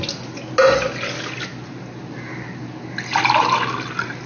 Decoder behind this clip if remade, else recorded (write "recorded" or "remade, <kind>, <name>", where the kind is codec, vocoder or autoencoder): recorded